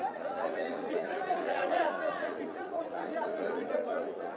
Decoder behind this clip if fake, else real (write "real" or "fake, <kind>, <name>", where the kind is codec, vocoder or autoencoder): fake, vocoder, Vocos